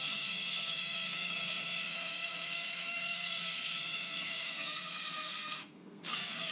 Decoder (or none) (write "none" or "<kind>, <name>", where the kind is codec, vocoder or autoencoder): codec, SNAC